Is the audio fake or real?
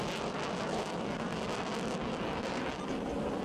real